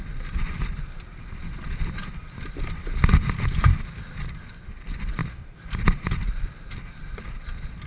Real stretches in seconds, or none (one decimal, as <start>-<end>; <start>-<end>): 0.0-7.9